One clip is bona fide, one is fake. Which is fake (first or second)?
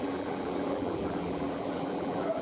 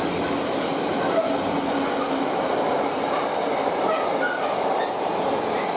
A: first